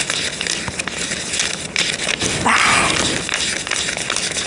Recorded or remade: recorded